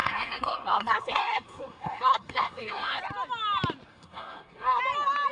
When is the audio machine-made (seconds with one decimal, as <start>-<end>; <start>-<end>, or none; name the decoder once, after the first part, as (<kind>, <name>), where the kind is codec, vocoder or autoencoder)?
0.0-3.0 (codec, SNAC); 3.9-4.8